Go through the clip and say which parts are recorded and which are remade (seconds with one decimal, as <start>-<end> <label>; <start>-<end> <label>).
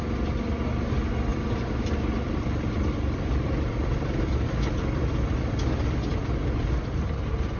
0.0-1.3 recorded; 1.3-5.5 remade; 5.5-6.1 recorded; 6.1-7.6 remade